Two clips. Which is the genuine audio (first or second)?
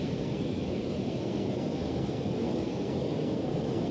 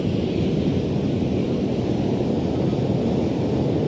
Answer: second